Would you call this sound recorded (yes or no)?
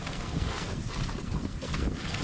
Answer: no